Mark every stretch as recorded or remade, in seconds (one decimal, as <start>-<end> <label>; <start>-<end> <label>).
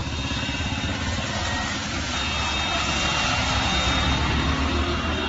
0.0-0.5 remade; 0.5-5.3 recorded